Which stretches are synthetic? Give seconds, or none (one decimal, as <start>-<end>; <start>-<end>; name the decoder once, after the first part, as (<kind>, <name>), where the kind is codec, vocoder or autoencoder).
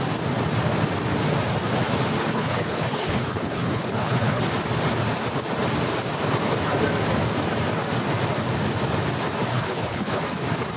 2.2-4.4 (codec, HILCodec); 9.5-10.2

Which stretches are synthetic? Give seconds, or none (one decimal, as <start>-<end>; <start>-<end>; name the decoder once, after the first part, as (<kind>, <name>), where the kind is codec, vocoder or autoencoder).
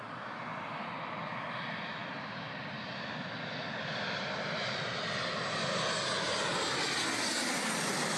none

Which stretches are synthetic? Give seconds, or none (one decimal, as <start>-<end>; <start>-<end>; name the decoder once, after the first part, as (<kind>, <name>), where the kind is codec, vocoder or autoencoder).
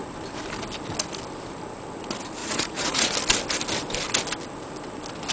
2.4-3.1 (vocoder, Vocos)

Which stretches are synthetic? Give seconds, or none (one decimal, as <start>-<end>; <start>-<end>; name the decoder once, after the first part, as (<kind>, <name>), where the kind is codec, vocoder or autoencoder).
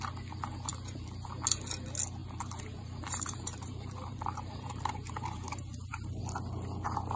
0.7-1.4 (vocoder, BigVGAN v2); 2.2-6.2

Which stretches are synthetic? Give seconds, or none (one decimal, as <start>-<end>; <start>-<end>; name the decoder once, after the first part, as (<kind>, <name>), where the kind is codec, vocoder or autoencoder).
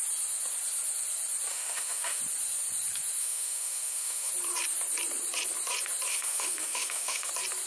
1.5-2.2 (autoencoder, DAC-VAE); 3.2-4.3; 6.1-7.3